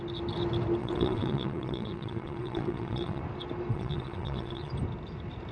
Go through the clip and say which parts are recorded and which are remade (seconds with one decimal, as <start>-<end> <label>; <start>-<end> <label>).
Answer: 0.0-0.8 recorded; 0.8-3.2 remade; 3.2-3.7 recorded; 3.7-4.7 remade; 4.7-5.5 recorded